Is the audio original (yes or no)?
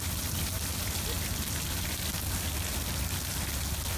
yes